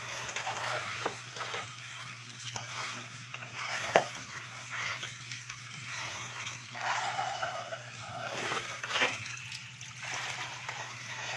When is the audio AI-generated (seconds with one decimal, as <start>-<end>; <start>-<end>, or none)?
0.0-9.4; 10.8-11.4